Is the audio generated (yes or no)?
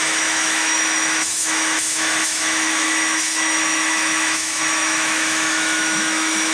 yes